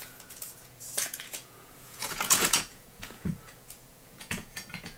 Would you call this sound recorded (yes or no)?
no